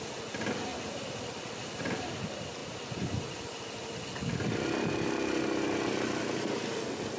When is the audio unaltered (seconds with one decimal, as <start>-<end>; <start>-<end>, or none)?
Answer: 0.0-7.2